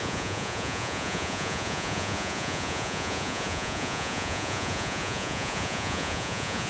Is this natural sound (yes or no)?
no